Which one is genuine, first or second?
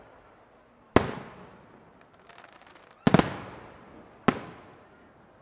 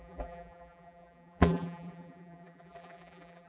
first